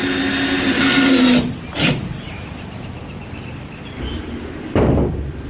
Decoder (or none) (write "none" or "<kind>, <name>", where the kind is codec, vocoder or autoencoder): none